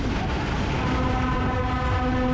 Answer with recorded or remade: recorded